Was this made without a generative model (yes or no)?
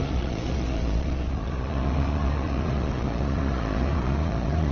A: no